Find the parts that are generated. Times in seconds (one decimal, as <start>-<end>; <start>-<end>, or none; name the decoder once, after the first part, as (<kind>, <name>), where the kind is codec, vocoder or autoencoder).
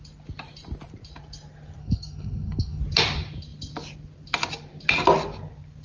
1.8-2.8 (codec, SNAC)